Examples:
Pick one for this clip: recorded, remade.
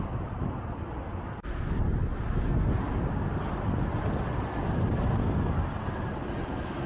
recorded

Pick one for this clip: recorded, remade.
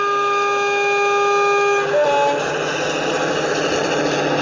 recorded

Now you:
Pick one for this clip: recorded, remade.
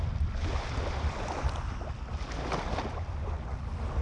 recorded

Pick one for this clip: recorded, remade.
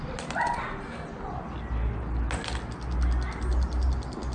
recorded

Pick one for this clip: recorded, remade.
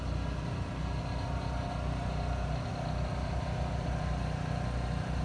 recorded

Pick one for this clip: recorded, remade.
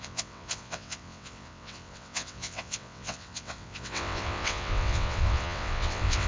remade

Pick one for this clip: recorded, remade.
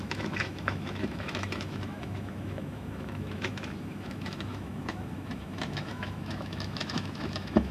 remade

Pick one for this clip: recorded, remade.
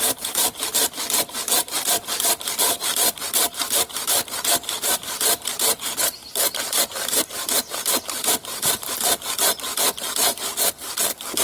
recorded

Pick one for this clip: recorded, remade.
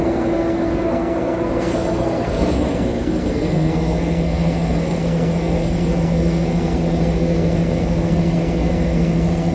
remade